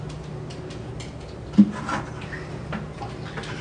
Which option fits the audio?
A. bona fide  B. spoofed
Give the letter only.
A